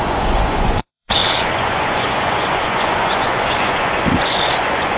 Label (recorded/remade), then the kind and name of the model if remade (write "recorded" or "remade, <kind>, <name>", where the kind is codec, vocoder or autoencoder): remade, vocoder, Vocos